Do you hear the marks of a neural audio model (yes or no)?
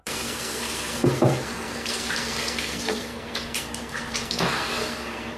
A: yes